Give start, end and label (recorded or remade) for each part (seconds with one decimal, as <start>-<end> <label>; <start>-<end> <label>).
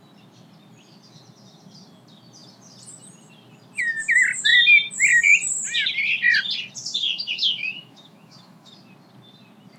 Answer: 0.0-6.9 recorded; 6.9-8.7 remade; 8.7-9.8 recorded